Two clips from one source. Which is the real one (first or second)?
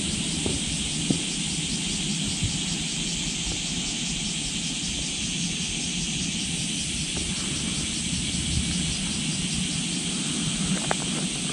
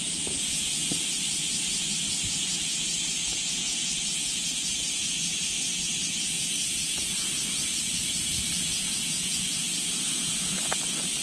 first